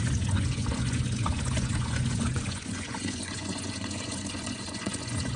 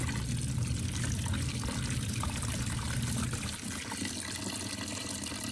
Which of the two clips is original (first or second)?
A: second